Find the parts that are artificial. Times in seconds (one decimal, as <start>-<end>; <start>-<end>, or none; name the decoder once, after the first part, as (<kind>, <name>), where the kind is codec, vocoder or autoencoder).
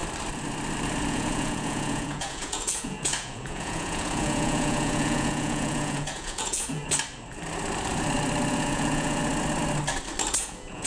1.1-6.8 (vocoder, Vocos); 8.5-9.2; 10.4-10.9